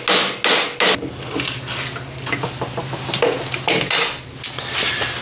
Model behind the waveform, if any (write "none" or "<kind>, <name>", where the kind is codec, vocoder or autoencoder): none